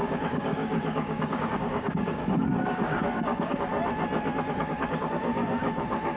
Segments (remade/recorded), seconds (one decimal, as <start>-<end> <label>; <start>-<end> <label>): 0.0-3.7 remade; 3.7-4.5 recorded; 4.5-6.2 remade